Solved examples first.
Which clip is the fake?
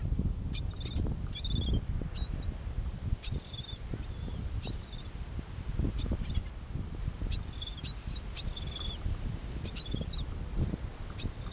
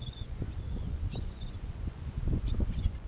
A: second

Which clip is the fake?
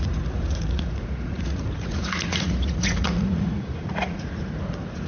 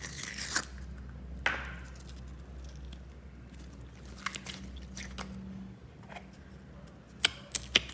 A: first